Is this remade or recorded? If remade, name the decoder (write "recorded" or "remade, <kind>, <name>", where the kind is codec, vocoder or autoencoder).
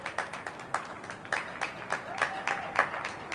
recorded